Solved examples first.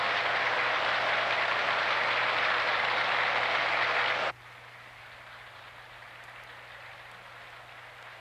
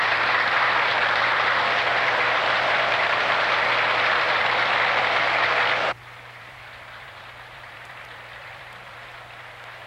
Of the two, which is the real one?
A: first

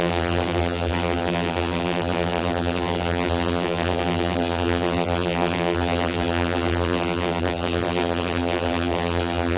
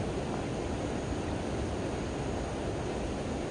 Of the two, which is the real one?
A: second